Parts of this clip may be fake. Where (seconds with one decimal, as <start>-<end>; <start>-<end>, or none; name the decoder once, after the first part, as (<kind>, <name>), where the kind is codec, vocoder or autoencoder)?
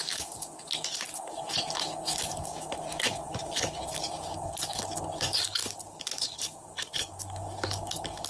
0.0-8.3 (codec, DAC)